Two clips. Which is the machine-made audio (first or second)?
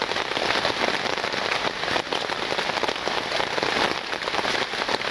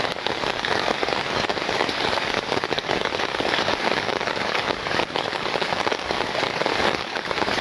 second